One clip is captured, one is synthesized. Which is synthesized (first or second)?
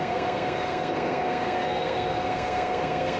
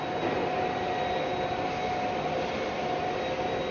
first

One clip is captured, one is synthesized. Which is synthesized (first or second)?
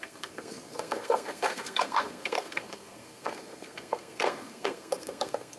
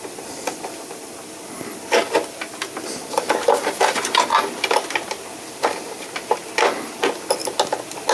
first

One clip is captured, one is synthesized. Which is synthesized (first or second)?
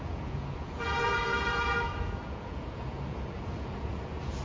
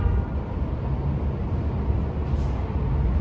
first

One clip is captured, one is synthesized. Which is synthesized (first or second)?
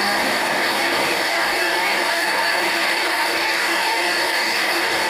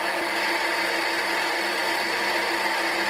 first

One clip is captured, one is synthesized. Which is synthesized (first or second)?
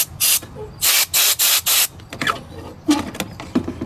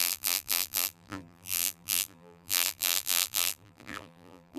second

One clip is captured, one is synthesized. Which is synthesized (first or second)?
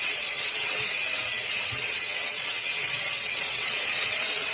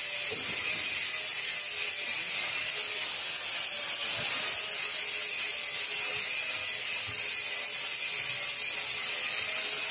first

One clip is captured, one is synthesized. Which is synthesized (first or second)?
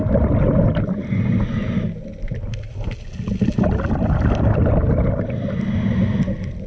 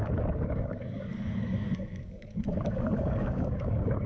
second